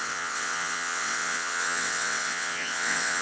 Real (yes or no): no